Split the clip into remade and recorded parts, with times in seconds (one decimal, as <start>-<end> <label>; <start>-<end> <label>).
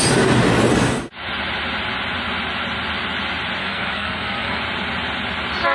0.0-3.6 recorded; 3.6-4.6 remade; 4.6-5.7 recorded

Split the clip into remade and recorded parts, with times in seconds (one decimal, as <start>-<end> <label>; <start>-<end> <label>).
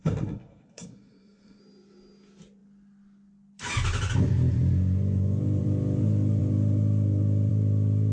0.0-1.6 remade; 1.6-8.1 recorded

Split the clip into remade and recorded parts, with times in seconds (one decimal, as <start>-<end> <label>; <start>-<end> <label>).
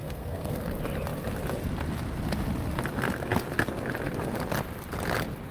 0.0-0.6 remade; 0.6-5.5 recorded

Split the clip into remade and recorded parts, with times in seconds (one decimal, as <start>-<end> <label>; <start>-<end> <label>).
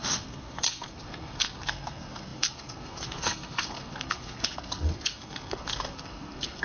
0.0-6.6 remade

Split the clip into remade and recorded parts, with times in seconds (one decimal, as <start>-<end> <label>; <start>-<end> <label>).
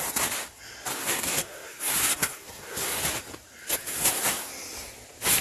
0.0-1.0 recorded; 1.0-3.0 remade; 3.0-3.8 recorded; 3.8-4.5 remade; 4.5-5.4 recorded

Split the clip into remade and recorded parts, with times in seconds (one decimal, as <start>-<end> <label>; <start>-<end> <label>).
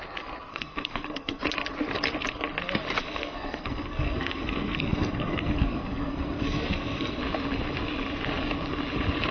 0.0-0.5 recorded; 0.5-1.4 remade; 1.4-3.0 recorded; 3.0-7.2 remade; 7.2-9.3 recorded